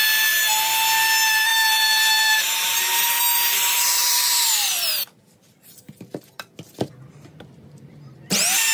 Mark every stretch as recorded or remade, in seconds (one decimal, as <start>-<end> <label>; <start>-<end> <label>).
0.0-1.5 recorded; 1.5-6.2 remade; 6.2-8.7 recorded